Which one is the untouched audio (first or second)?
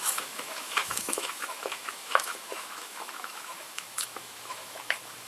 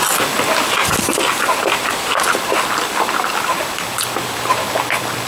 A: second